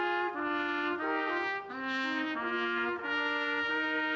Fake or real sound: real